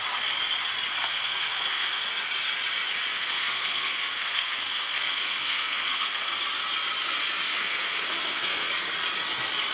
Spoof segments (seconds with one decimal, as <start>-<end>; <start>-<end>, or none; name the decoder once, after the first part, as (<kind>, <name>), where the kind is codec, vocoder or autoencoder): 1.0-2.0 (codec, SNAC); 3.1-6.3; 7.6-8.7